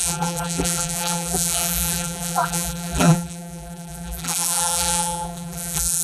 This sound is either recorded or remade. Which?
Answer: remade